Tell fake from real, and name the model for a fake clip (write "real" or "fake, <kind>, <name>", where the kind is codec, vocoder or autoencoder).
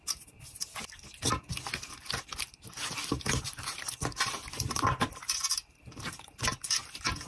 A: real